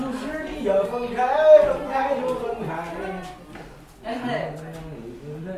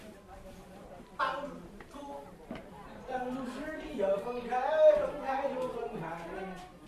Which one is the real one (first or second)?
first